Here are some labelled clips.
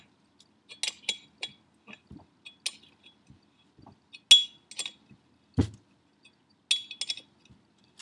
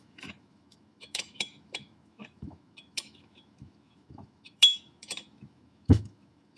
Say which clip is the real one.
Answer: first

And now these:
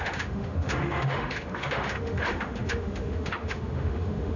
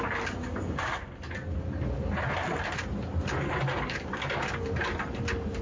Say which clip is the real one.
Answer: second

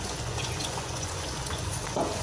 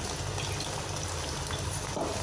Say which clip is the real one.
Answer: second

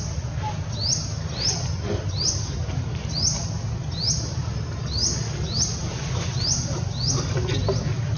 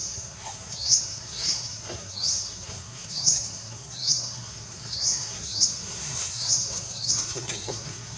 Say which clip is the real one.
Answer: first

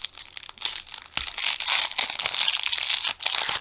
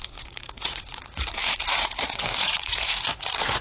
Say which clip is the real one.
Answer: first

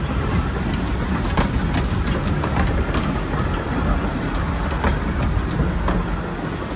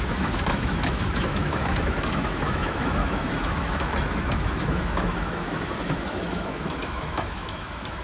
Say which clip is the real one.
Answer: first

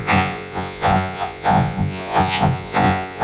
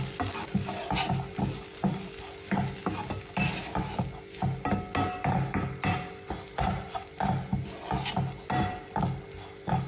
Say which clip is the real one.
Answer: second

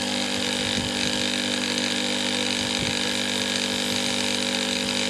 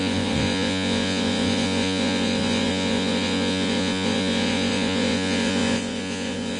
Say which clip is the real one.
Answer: first